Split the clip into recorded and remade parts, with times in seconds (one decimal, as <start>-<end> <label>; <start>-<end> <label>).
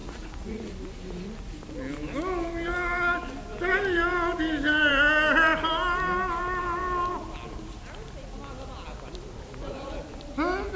0.0-0.7 remade; 0.7-10.8 recorded